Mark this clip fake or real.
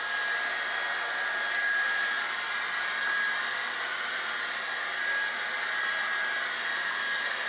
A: real